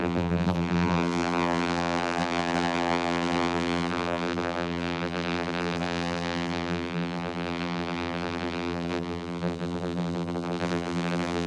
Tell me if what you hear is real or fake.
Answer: fake